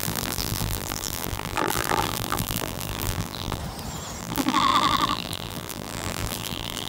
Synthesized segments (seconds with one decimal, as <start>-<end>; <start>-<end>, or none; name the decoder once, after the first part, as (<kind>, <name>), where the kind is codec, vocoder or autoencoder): 0.0-3.6 (vocoder, BigVGAN v2); 4.2-6.9